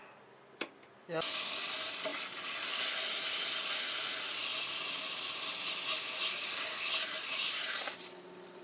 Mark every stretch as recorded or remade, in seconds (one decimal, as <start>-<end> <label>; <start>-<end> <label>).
0.0-8.6 recorded

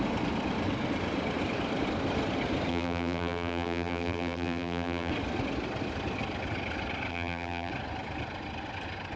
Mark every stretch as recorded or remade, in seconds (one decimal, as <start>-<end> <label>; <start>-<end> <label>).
0.0-2.7 recorded; 2.7-5.1 remade; 5.1-7.1 recorded; 7.1-7.7 remade; 7.7-9.2 recorded

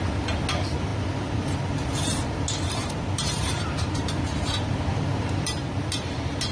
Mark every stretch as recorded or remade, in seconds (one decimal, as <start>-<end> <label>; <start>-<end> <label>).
0.0-2.8 recorded; 2.8-5.7 remade; 5.7-6.5 recorded